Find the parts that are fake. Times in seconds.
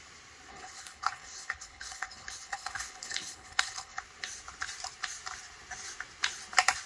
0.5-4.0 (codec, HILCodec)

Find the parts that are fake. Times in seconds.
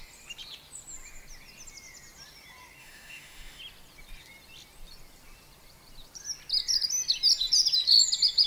2.8-3.6 (autoencoder, DAC-VAE)